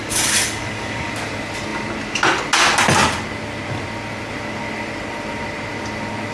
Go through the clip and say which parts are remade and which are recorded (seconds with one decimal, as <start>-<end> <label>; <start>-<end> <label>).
0.0-1.1 remade; 1.1-6.3 recorded